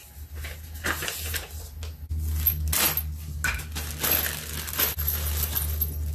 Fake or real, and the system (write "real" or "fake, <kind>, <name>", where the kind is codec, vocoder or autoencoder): real